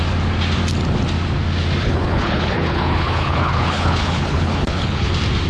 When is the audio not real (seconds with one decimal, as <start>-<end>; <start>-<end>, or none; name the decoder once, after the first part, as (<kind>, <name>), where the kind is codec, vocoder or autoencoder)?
1.8-5.1 (codec, HILCodec)